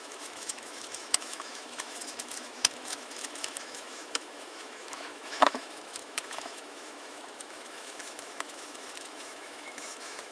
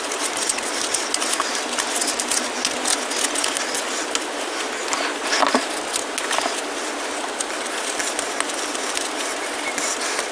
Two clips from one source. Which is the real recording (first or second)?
second